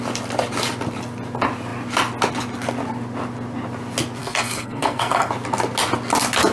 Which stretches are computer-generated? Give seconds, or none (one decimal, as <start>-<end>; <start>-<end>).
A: 4.2-5.3